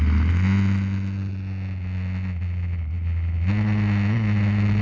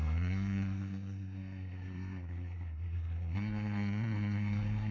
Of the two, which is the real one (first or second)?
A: first